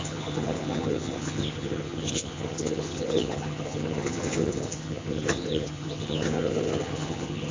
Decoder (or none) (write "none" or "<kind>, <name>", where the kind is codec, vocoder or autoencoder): vocoder, HiFi-GAN